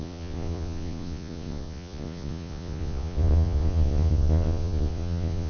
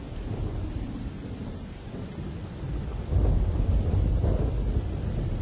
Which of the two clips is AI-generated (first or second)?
first